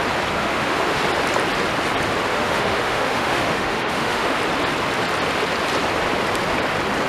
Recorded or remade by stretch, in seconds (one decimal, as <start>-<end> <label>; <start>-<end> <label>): 0.0-0.4 recorded; 0.4-1.0 remade; 1.0-2.3 recorded; 2.3-4.4 remade; 4.4-7.1 recorded